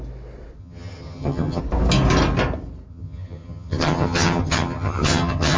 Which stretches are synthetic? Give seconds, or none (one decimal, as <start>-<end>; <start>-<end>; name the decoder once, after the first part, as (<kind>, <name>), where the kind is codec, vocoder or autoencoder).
0.6-1.6 (vocoder, HiFi-GAN); 2.9-5.6